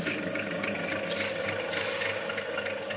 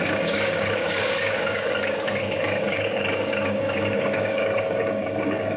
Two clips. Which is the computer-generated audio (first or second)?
second